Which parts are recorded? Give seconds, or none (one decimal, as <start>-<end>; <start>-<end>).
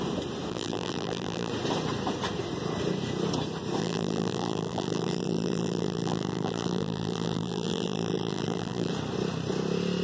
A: 0.0-0.5; 1.5-3.8; 8.9-10.0